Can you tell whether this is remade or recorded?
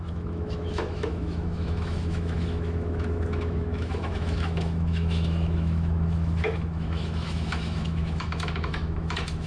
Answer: remade